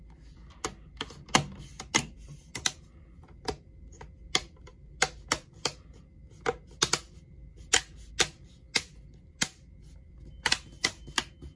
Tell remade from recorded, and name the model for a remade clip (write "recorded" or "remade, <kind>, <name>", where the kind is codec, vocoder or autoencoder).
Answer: recorded